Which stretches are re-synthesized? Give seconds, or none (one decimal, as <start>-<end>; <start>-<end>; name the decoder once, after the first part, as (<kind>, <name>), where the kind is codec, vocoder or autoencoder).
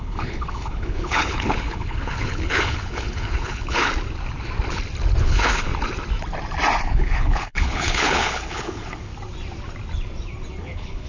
0.0-3.9 (codec, HILCodec); 5.2-5.7; 6.8-9.1; 10.6-11.1